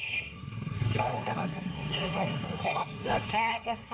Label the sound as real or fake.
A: fake